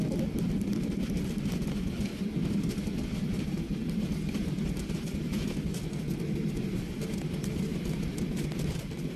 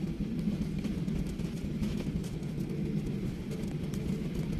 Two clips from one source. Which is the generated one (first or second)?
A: first